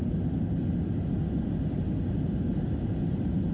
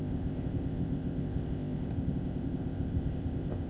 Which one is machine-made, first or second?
second